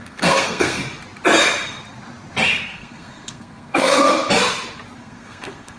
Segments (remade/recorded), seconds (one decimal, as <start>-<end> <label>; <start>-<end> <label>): 0.0-0.8 remade; 0.8-2.6 recorded; 2.6-4.1 remade; 4.1-5.0 recorded; 5.0-5.8 remade